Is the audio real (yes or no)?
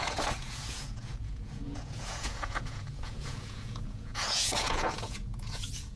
no